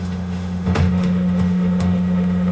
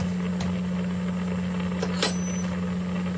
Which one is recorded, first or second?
second